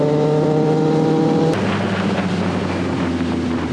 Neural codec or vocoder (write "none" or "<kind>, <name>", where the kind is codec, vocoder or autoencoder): none